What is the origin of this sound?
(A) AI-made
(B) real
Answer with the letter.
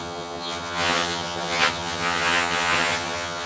A